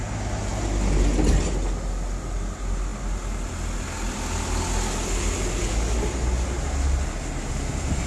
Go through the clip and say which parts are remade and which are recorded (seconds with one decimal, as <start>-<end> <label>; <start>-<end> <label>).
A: 0.0-8.1 recorded